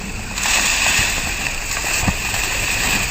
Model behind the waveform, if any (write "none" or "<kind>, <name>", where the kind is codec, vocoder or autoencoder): none